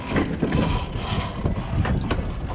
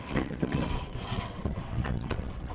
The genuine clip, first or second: first